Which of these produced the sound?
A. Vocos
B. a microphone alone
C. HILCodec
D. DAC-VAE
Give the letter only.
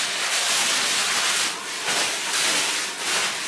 B